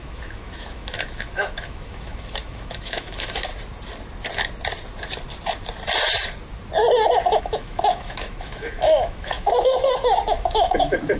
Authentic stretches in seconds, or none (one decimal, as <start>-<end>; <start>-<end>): 3.5-7.4